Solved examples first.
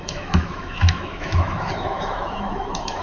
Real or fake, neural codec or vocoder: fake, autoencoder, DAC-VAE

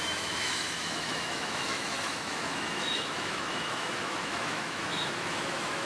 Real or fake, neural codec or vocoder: fake, autoencoder, DAC-VAE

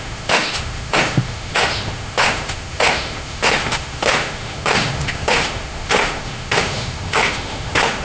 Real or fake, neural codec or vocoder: fake, autoencoder, DAC-VAE